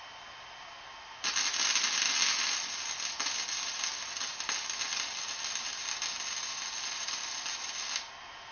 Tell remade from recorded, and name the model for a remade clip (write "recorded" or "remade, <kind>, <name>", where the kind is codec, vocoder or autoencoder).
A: recorded